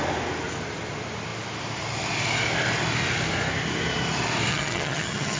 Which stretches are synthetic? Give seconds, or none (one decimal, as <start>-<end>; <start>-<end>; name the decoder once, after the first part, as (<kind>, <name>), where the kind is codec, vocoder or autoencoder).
4.5-5.4 (vocoder, HiFi-GAN)